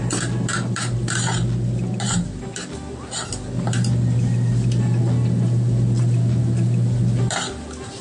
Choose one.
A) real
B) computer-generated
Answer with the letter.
A